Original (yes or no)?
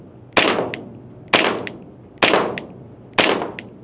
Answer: yes